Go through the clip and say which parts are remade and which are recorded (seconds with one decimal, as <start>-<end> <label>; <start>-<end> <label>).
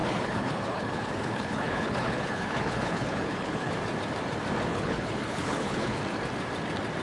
0.0-3.7 remade; 3.7-4.7 recorded; 4.7-6.0 remade; 6.0-7.0 recorded